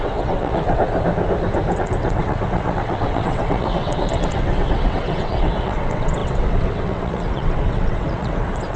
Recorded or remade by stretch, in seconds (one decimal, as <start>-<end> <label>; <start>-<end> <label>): 0.0-0.8 remade; 0.8-1.7 recorded; 1.7-8.8 remade